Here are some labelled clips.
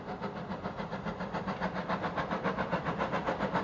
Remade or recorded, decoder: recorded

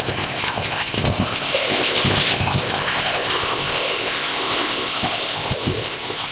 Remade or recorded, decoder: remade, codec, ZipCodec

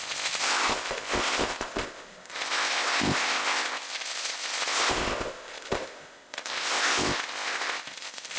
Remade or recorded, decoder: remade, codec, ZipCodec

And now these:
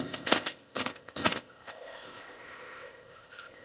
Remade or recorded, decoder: remade, codec, ZipCodec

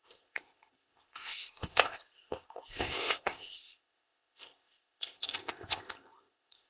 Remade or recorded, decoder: remade, codec, ZipCodec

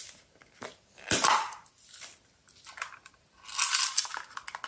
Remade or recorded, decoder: recorded